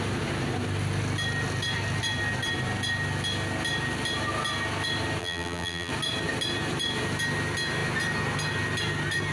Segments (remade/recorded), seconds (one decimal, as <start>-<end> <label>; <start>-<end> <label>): 0.0-5.2 recorded; 5.2-5.9 remade; 5.9-9.3 recorded